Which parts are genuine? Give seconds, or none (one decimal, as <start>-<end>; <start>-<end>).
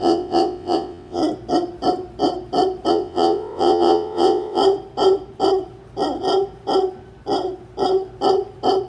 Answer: 1.2-2.9; 4.6-8.9